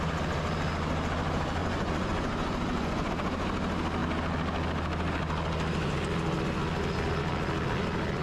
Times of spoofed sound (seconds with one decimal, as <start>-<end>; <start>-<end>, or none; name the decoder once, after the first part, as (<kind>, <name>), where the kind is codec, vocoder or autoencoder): 1.6-3.1 (vocoder, Vocos)